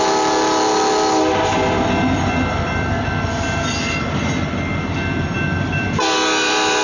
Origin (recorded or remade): recorded